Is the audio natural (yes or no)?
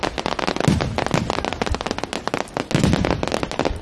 yes